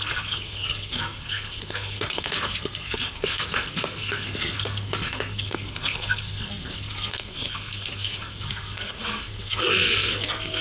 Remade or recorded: remade